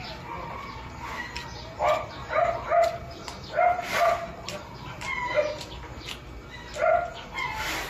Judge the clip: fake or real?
real